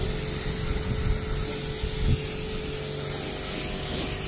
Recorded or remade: recorded